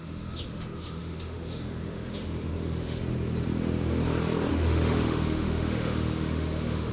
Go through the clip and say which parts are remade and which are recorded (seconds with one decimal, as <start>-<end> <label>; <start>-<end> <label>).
0.0-3.0 remade; 3.0-4.5 recorded; 4.5-6.9 remade